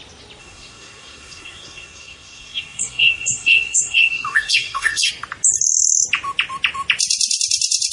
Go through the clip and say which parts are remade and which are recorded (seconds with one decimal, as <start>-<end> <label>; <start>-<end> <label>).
0.0-0.4 recorded; 0.4-5.1 remade; 5.1-7.9 recorded